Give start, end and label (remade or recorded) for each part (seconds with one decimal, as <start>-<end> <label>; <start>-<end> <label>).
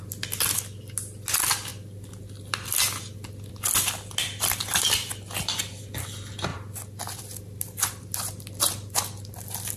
0.0-9.8 recorded